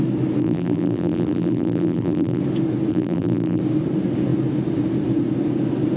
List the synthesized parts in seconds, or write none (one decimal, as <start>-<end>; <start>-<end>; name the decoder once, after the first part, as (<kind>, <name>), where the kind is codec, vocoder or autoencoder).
0.4-2.4 (vocoder, BigVGAN v2); 2.9-3.6